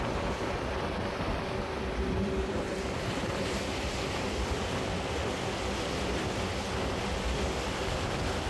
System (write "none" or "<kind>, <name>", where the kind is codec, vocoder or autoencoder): none